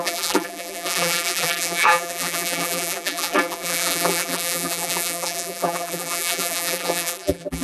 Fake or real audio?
fake